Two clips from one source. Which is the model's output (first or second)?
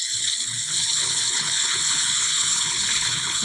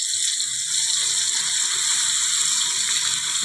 first